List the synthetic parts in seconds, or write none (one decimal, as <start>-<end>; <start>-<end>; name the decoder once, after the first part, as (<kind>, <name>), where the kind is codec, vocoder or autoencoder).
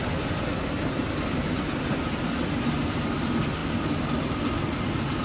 none